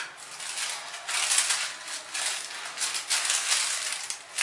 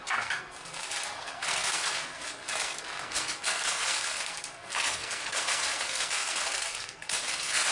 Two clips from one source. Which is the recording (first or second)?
first